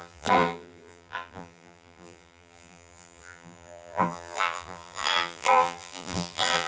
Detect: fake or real fake